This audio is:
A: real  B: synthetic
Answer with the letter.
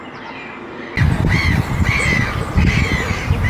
A